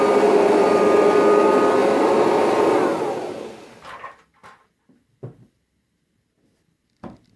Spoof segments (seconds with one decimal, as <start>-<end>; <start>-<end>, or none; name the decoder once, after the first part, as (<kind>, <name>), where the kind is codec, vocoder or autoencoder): none